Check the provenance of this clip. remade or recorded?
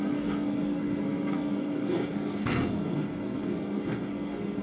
remade